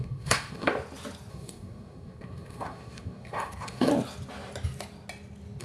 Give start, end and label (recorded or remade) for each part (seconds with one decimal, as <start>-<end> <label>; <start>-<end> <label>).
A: 0.0-0.7 remade; 0.7-1.3 recorded; 1.3-3.9 remade; 3.9-5.6 recorded